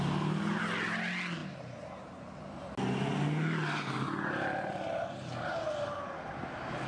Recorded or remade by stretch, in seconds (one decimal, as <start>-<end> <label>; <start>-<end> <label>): 0.0-6.9 recorded